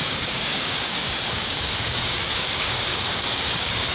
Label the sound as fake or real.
fake